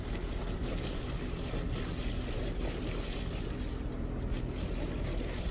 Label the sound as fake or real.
real